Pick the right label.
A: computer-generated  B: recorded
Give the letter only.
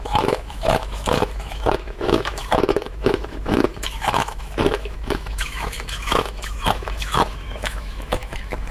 A